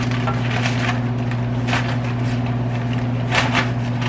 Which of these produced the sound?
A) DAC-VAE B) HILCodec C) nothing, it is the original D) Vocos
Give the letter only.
C